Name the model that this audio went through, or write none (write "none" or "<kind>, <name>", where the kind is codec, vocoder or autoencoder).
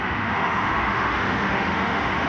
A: autoencoder, DAC-VAE